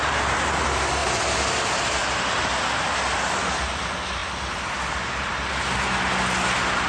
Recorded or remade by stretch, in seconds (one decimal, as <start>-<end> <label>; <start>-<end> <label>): 0.0-6.9 recorded